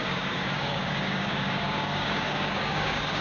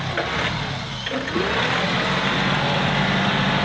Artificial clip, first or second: first